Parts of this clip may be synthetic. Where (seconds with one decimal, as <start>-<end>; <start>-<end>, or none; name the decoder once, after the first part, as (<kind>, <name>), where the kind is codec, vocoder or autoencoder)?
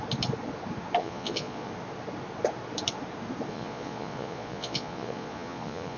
1.0-1.7 (vocoder, Vocos); 3.5-6.0